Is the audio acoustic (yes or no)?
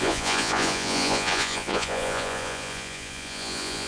no